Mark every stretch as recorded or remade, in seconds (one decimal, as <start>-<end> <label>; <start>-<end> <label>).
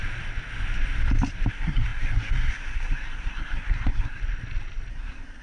0.0-1.5 recorded; 1.5-4.2 remade; 4.2-4.9 recorded; 4.9-5.4 remade